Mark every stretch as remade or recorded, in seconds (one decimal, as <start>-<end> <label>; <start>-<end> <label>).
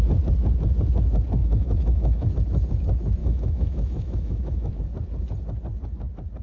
0.0-1.4 recorded; 1.4-2.3 remade; 2.3-3.2 recorded; 3.2-4.7 remade; 4.7-6.4 recorded